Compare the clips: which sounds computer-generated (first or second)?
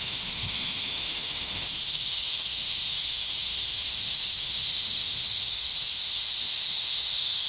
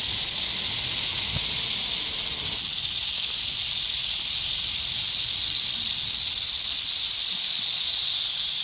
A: first